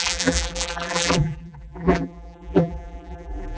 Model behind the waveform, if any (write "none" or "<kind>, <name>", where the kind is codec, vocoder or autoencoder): vocoder, BigVGAN v2